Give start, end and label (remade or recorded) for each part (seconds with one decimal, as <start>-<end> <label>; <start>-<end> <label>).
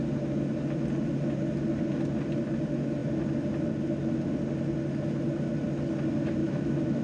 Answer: 0.0-6.4 recorded; 6.4-7.0 remade